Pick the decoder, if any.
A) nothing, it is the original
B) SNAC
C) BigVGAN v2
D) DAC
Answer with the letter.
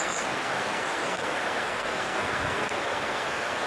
B